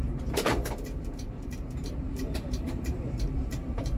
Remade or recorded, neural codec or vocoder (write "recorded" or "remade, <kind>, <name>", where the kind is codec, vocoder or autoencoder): remade, vocoder, BigVGAN v2